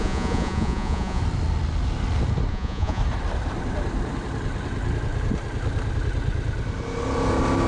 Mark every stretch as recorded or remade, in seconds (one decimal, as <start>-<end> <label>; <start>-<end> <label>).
0.0-1.2 remade; 1.2-2.5 recorded; 2.5-3.0 remade; 3.0-7.7 recorded